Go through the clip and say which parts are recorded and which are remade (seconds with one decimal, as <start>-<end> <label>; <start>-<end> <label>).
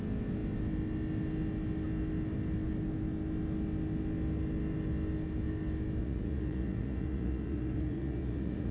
0.0-6.0 recorded; 6.0-8.7 remade